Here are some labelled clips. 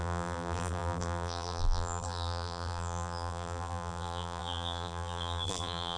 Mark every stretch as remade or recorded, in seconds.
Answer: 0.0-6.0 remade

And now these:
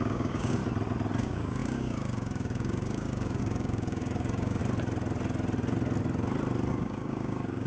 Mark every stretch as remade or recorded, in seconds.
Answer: 0.0-0.6 remade; 0.6-1.2 recorded; 1.2-4.6 remade; 4.6-6.7 recorded; 6.7-7.7 remade

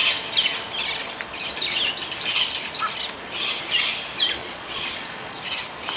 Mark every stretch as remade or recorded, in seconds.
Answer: 0.0-4.4 recorded; 4.4-5.4 remade; 5.4-6.0 recorded

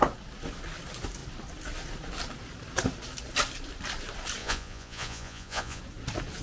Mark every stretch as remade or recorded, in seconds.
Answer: 0.0-4.4 recorded; 4.4-5.8 remade; 5.8-6.4 recorded

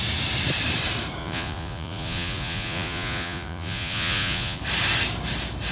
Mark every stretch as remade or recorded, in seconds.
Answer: 0.0-1.2 recorded; 1.2-4.6 remade; 4.6-5.7 recorded

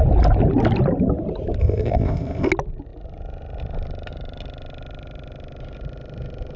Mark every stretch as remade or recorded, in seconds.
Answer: 0.0-1.6 recorded; 1.6-2.5 remade; 2.5-6.6 recorded

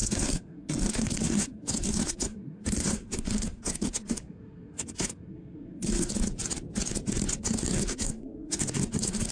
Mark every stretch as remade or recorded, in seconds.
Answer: 0.0-6.1 remade; 6.1-7.3 recorded; 7.3-9.3 remade

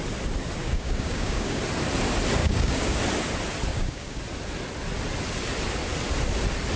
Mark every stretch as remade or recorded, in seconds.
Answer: 0.0-0.6 recorded; 0.6-1.6 remade; 1.6-2.4 recorded; 2.4-3.0 remade; 3.0-3.7 recorded; 3.7-4.2 remade; 4.2-6.8 recorded